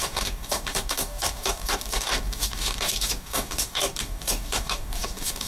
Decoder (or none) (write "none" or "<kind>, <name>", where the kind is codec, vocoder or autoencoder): codec, DAC